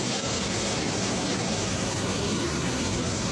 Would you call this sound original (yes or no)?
no